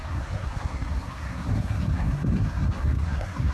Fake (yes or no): yes